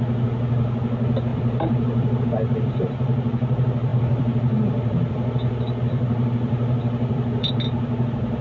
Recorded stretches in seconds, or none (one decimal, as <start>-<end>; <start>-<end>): 0.0-1.3; 2.2-3.9; 7.5-8.4

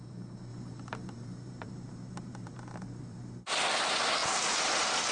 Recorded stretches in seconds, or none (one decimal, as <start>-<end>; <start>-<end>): 0.0-0.5; 3.6-4.2